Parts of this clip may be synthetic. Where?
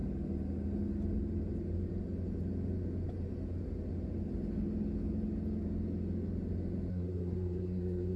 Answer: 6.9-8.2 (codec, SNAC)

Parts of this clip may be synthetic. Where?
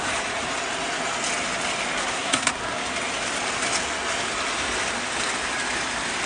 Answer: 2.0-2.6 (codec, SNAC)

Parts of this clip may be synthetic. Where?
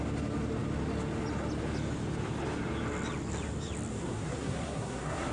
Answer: 3.9-5.3 (codec, SNAC)